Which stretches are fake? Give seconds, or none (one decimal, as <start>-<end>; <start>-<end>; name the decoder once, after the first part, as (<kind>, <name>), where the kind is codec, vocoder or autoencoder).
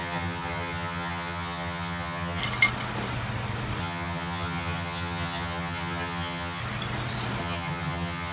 0.0-2.4 (vocoder, HiFi-GAN); 3.8-6.6; 7.4-8.3